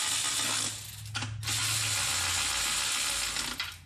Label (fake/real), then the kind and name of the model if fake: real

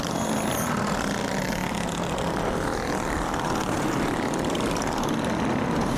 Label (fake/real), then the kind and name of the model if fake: real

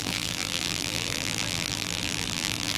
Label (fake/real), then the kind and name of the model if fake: fake, vocoder, BigVGAN v2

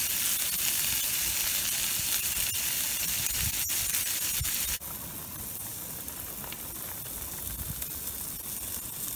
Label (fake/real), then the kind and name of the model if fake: real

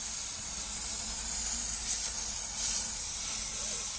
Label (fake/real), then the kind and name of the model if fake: fake, vocoder, BigVGAN v2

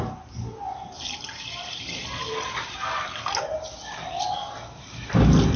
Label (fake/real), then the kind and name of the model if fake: real